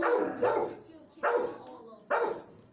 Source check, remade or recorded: recorded